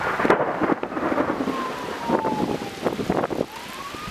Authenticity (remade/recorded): remade